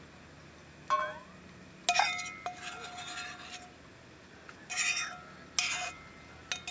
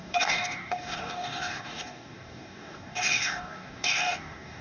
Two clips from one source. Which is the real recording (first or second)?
first